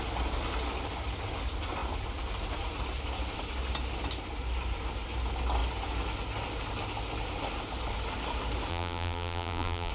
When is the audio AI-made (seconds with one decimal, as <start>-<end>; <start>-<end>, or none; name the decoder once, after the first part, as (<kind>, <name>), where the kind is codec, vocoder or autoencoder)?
8.7-9.9 (vocoder, BigVGAN v2)